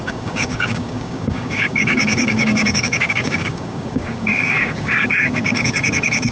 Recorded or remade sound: remade